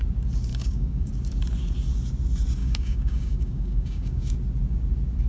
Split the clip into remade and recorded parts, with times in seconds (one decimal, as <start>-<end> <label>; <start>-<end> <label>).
0.0-0.5 recorded; 0.5-1.1 remade; 1.1-2.6 recorded; 2.6-4.3 remade; 4.3-5.3 recorded